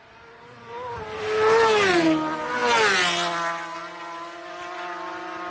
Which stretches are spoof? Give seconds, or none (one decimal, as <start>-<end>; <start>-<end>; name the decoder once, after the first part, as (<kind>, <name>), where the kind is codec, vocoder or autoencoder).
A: none